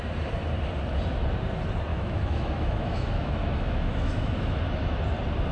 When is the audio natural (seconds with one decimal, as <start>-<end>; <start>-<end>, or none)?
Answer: 0.0-1.9; 4.6-5.5